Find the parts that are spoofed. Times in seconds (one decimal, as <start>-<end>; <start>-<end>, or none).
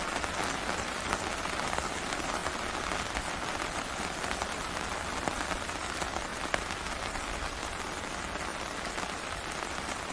none